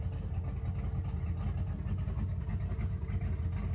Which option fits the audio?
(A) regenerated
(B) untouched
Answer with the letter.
B